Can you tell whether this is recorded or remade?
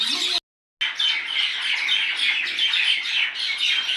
recorded